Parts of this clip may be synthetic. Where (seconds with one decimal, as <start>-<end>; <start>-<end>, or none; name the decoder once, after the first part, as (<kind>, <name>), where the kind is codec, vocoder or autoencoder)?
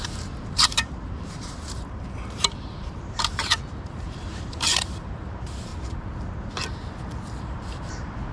0.0-5.7 (vocoder, BigVGAN v2); 7.4-8.3